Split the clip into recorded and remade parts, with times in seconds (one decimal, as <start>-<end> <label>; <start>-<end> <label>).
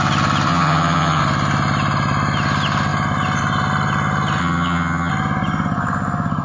0.0-0.5 recorded; 0.5-1.2 remade; 1.2-4.4 recorded; 4.4-5.1 remade; 5.1-6.4 recorded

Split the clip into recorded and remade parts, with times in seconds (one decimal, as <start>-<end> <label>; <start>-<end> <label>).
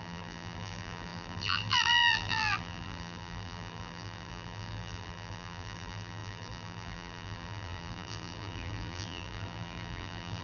0.0-10.4 remade